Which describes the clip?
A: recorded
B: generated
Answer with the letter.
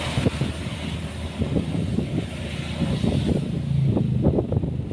A